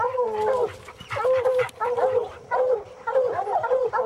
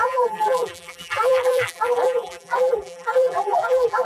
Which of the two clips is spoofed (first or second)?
second